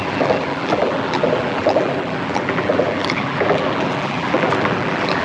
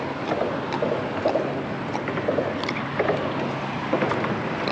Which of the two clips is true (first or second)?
second